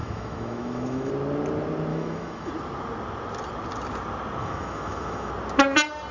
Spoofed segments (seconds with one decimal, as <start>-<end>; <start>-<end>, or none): 0.0-1.1; 1.9-2.5; 4.4-5.3